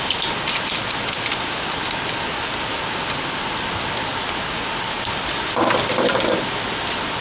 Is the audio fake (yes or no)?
no